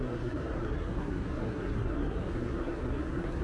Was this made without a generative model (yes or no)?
no